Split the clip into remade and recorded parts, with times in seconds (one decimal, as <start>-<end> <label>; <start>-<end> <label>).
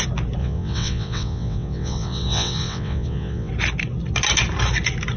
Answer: 0.0-0.4 recorded; 0.4-3.5 remade; 3.5-5.2 recorded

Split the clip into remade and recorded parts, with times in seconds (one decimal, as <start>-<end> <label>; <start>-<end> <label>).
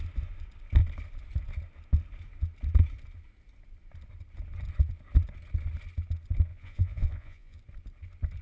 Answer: 0.0-6.5 recorded; 6.5-7.6 remade; 7.6-8.4 recorded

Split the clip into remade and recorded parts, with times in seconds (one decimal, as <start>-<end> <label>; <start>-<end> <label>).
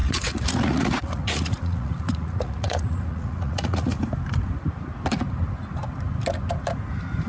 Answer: 0.0-4.0 remade; 4.0-7.3 recorded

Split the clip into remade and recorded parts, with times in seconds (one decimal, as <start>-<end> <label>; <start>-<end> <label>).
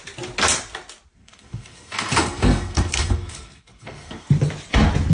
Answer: 0.0-1.2 recorded; 1.2-4.3 remade; 4.3-5.1 recorded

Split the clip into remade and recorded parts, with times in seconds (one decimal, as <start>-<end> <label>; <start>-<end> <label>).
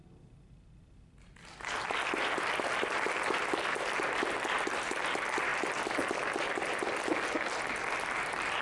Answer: 0.0-8.6 recorded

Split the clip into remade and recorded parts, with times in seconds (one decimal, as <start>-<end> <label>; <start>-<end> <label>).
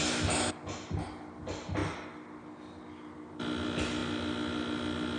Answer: 0.0-5.2 recorded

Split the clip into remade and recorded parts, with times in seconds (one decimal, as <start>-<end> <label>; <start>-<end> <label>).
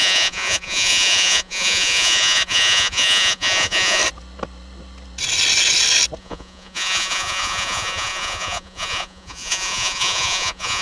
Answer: 0.0-4.0 remade; 4.0-6.2 recorded; 6.2-10.8 remade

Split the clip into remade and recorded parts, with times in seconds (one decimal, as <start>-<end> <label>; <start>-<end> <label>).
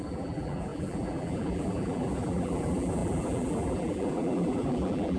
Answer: 0.0-5.2 remade